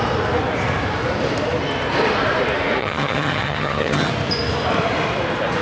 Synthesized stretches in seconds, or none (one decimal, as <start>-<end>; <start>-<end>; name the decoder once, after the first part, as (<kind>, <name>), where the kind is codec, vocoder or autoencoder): 2.8-4.1 (vocoder, HiFi-GAN)